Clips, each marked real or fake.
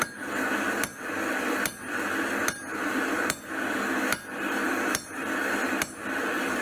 real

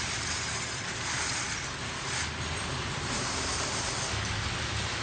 real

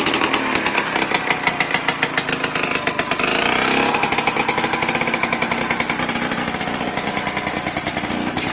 real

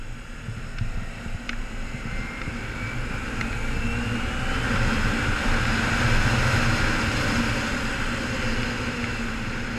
real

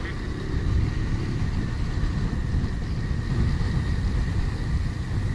real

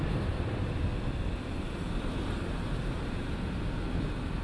real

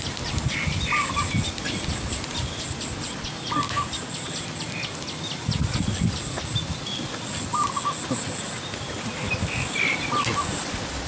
real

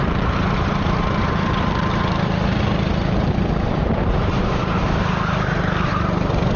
fake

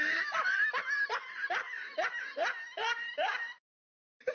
fake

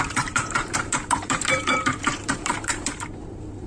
fake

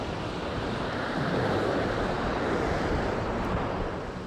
fake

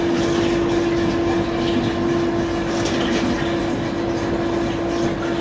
real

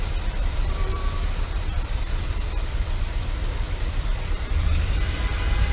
fake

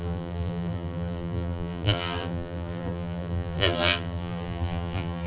fake